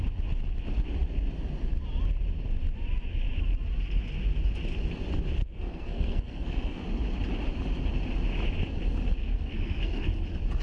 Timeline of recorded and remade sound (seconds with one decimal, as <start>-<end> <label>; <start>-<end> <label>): 0.0-5.4 recorded; 5.4-6.8 remade; 6.8-9.2 recorded; 9.2-10.1 remade; 10.1-10.6 recorded